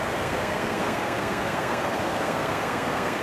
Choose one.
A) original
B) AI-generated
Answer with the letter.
B